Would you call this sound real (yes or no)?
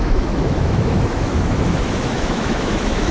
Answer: no